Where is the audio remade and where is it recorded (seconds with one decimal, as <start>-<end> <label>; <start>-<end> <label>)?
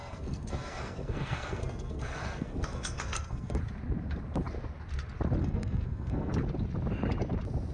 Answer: 0.0-3.6 remade; 3.6-5.4 recorded; 5.4-6.3 remade; 6.3-7.7 recorded